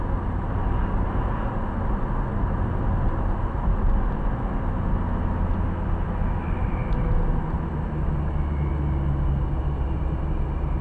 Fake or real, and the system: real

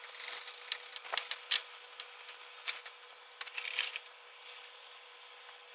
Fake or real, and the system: real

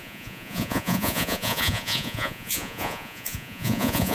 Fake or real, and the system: fake, vocoder, Vocos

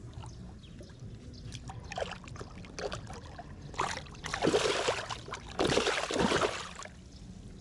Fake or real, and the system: real